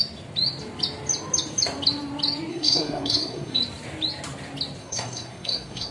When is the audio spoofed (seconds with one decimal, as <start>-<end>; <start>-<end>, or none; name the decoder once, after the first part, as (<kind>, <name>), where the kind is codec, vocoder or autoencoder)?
2.5-3.6 (codec, SNAC); 4.8-5.9